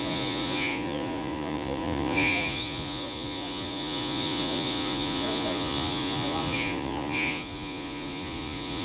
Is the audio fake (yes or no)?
yes